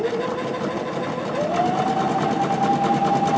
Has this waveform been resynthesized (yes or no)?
no